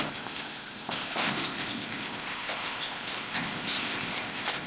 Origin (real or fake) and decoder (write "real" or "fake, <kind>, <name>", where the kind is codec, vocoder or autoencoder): fake, codec, ZipCodec